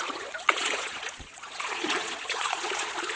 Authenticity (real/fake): fake